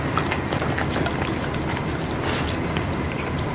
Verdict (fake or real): real